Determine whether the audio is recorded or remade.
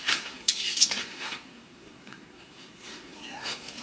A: remade